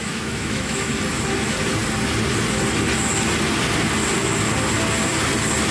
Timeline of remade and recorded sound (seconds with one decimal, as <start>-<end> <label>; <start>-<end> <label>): 0.0-0.9 remade; 0.9-5.7 recorded